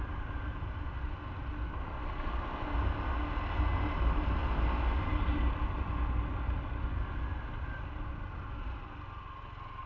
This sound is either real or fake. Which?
real